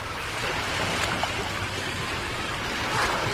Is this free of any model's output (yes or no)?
yes